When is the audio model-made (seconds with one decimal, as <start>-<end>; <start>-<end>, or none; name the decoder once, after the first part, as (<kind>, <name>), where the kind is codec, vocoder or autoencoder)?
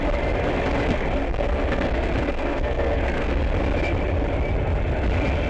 0.9-3.4 (codec, SNAC)